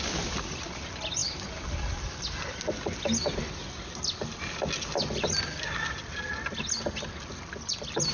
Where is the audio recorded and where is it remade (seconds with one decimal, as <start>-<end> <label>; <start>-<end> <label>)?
0.0-8.1 recorded

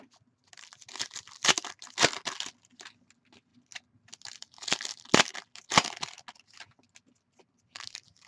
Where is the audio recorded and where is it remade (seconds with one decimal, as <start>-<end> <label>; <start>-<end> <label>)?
0.0-8.3 recorded

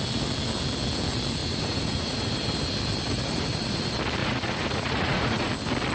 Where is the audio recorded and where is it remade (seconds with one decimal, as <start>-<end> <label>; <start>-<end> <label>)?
0.0-1.4 recorded; 1.4-2.3 remade; 2.3-4.2 recorded; 4.2-5.5 remade; 5.5-5.9 recorded

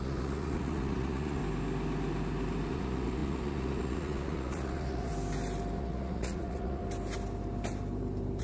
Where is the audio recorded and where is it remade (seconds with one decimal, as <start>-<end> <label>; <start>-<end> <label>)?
0.0-1.4 remade; 1.4-2.7 recorded; 2.7-5.1 remade; 5.1-5.8 recorded; 5.8-6.8 remade; 6.8-8.4 recorded

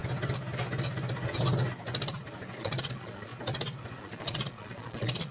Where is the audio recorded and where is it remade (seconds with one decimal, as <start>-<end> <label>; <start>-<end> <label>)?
0.0-2.6 recorded; 2.6-3.3 remade; 3.3-4.0 recorded; 4.0-5.3 remade